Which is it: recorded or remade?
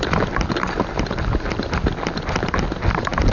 recorded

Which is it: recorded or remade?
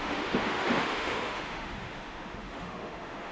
remade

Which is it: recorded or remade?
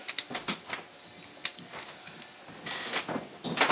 recorded